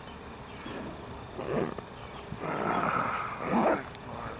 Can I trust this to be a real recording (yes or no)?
yes